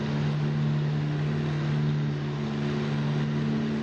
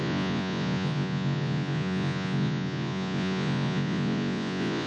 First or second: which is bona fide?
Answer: first